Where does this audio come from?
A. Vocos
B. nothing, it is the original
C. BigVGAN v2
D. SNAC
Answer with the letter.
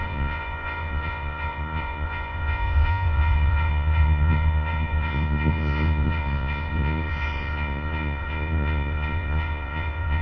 A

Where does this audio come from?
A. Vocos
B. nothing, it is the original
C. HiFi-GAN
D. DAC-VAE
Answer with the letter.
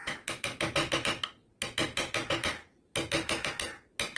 B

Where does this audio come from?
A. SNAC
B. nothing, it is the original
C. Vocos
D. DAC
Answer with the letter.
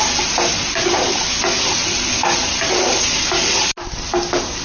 B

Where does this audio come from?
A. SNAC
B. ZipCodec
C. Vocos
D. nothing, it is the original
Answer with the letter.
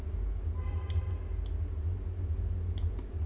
D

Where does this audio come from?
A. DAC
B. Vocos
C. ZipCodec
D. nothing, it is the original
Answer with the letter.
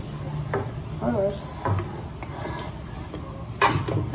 D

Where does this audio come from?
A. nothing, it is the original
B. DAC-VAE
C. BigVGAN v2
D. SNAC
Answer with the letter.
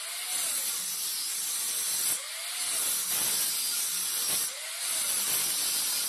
A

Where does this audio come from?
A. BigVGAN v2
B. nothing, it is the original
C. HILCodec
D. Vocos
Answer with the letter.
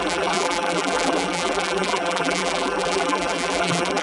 A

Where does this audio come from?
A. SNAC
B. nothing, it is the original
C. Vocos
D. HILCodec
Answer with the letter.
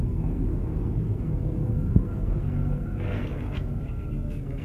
A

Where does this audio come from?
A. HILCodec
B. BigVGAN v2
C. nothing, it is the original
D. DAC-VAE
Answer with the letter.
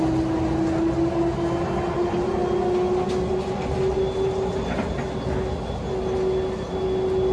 C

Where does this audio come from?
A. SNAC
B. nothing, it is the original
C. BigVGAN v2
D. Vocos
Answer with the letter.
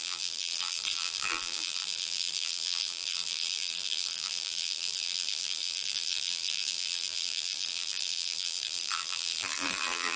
C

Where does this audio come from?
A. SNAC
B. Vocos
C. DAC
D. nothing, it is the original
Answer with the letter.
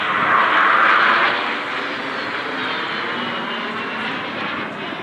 D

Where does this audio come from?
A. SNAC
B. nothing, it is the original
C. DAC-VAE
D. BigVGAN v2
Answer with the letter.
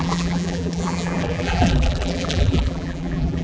D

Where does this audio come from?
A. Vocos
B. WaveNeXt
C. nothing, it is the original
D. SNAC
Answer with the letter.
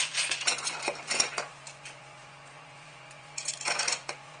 A